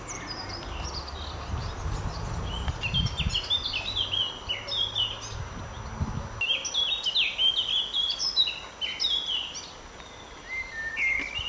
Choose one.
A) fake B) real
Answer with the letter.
B